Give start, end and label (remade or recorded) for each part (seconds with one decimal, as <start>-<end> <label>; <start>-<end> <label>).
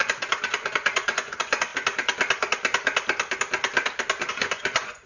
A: 0.0-1.7 remade; 1.7-4.3 recorded; 4.3-5.1 remade